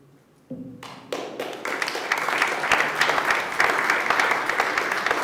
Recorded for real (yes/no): yes